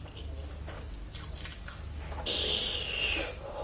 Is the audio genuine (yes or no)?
yes